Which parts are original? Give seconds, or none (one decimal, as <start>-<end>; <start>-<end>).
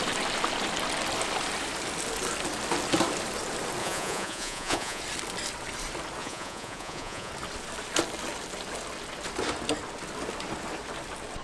0.0-3.8; 5.0-6.2; 7.3-11.4